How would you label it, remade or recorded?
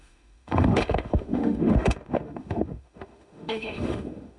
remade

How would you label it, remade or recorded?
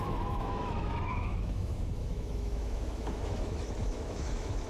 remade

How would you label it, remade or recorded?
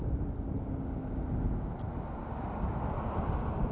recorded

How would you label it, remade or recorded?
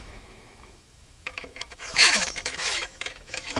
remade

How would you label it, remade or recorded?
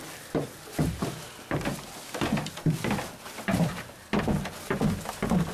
recorded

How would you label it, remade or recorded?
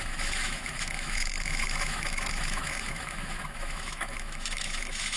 remade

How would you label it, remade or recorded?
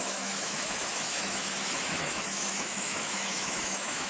remade